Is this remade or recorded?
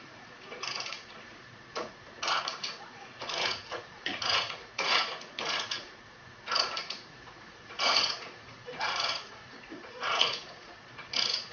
remade